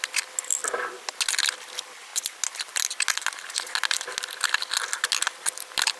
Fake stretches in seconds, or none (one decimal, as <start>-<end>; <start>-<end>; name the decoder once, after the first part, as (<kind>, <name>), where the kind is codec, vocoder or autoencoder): none